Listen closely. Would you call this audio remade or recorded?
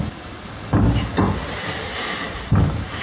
recorded